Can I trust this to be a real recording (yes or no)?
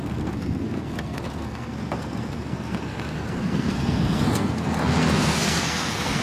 no